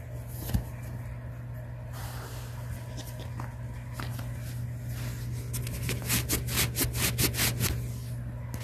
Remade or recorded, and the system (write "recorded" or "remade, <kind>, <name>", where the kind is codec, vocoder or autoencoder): recorded